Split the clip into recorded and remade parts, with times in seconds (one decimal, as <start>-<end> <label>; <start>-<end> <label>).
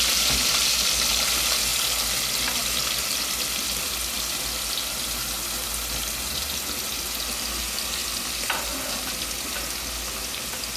0.0-10.8 recorded